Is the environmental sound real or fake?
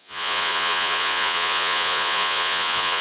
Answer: fake